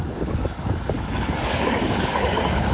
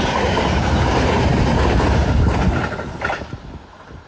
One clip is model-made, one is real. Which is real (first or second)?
second